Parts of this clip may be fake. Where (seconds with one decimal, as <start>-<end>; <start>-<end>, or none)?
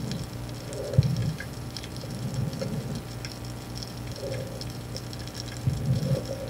1.2-2.1